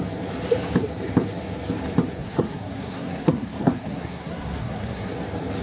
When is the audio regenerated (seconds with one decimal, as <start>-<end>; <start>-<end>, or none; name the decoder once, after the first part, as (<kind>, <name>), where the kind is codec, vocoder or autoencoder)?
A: 2.2-5.1 (codec, SNAC)